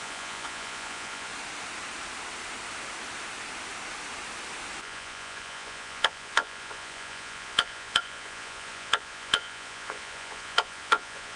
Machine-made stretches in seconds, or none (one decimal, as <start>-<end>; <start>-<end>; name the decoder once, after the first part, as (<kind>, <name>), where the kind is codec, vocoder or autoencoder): 0.0-1.3 (vocoder, Vocos); 4.8-11.4